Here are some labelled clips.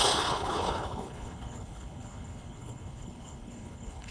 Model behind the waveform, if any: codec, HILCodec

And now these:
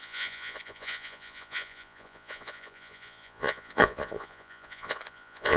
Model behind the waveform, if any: vocoder, Vocos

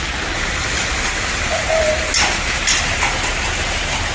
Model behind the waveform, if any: none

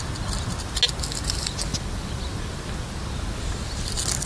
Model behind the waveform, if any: none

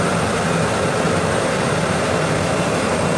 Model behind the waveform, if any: none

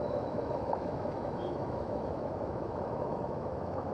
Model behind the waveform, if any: autoencoder, DAC-VAE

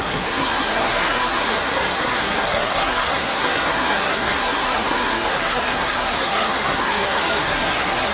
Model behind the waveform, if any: codec, SNAC